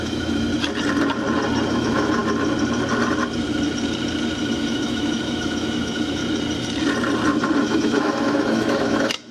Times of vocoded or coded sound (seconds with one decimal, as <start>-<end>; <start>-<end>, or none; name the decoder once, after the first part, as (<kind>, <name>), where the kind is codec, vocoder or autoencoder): 0.0-0.5 (autoencoder, DAC-VAE); 1.7-2.2; 4.4-6.2; 7.6-9.3

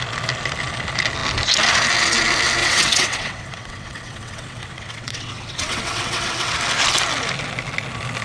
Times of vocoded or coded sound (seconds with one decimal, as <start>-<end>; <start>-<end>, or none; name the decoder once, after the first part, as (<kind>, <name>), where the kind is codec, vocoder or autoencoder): 2.6-6.5 (vocoder, WaveNeXt)